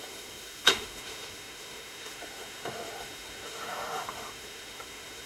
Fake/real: fake